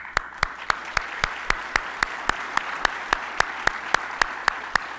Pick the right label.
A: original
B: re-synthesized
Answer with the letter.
A